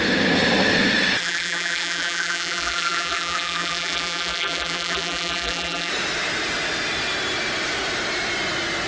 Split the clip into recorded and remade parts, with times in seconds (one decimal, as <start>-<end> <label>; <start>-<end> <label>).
0.0-1.2 recorded; 1.2-5.9 remade; 5.9-8.9 recorded